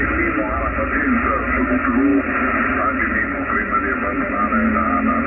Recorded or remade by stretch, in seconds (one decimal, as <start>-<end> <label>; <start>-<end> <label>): 0.0-5.3 recorded